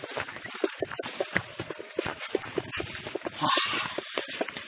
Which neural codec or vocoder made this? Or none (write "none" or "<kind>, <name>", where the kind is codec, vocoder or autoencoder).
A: vocoder, BigVGAN v2